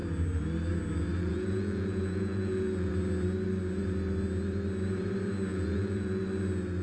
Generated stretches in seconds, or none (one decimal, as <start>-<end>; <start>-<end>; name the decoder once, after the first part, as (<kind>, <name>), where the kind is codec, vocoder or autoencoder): 1.1-2.9 (vocoder, Vocos); 5.5-6.2